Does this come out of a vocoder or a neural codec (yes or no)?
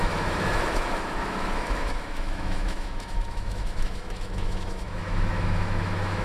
yes